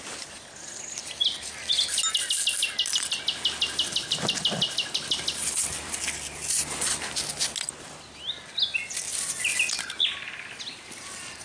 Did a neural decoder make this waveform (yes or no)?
no